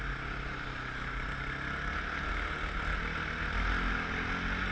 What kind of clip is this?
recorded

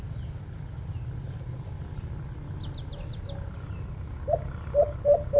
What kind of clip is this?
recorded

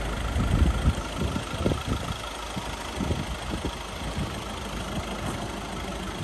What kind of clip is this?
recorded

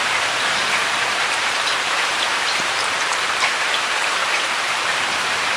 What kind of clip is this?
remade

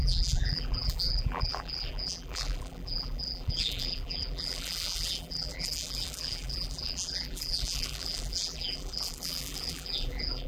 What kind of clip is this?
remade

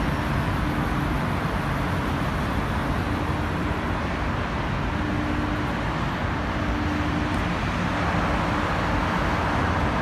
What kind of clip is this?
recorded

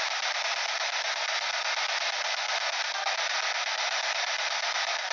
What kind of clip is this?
recorded